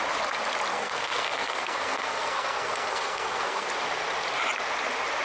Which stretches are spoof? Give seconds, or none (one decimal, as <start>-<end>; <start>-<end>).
0.7-3.7